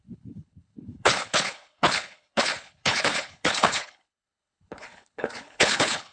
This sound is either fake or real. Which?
fake